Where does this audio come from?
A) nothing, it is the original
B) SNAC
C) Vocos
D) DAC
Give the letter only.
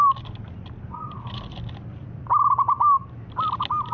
A